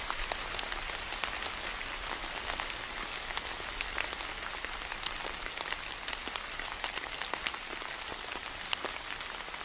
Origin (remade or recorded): recorded